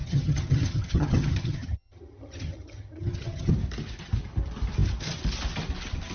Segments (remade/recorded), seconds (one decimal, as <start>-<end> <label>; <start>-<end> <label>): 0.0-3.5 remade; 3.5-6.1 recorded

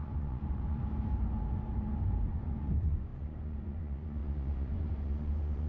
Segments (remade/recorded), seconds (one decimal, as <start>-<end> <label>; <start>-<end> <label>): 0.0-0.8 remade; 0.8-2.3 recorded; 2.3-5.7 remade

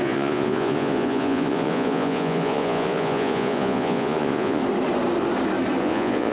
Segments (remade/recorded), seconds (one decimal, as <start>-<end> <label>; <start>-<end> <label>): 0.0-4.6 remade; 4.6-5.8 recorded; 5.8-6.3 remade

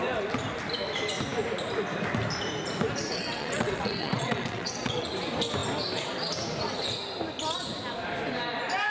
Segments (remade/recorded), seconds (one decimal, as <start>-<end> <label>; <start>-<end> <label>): 0.0-3.1 recorded; 3.1-5.1 remade; 5.1-8.9 recorded

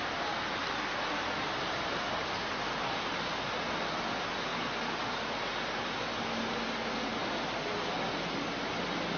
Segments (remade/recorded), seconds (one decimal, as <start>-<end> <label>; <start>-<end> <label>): 0.0-9.2 recorded

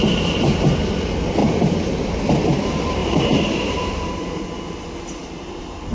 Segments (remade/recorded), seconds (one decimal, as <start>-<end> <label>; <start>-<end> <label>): 0.0-1.4 recorded; 1.4-2.2 remade; 2.2-3.0 recorded; 3.0-4.4 remade; 4.4-5.2 recorded; 5.2-5.9 remade

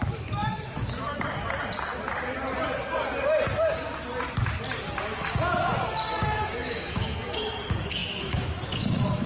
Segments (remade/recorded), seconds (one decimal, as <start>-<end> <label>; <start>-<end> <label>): 0.0-1.1 remade; 1.1-6.1 recorded; 6.1-9.3 remade

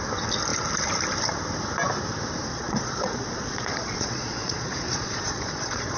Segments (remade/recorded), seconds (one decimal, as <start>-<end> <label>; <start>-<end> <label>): 0.0-2.5 recorded; 2.5-6.0 remade